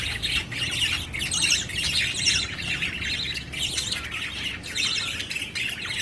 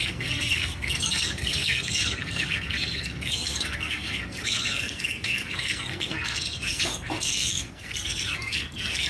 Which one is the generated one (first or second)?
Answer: second